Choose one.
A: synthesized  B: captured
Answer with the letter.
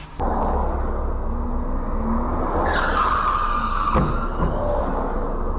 B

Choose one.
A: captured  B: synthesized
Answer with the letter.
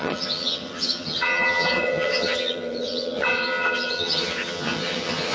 B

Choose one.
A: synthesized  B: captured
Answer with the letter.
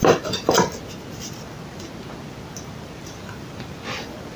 B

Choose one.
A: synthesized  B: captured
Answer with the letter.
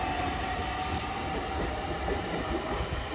B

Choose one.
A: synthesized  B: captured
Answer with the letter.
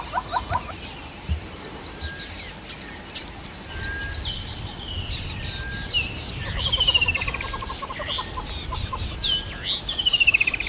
B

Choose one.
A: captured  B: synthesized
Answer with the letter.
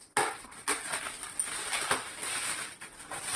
A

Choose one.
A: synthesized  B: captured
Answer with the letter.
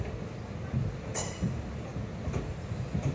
B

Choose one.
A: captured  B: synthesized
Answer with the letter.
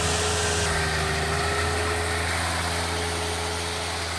A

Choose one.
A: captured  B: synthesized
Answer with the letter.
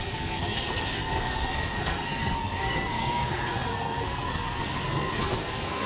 B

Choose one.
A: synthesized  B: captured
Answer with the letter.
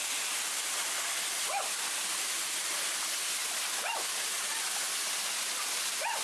B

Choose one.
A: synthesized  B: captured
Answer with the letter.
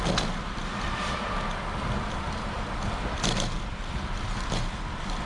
A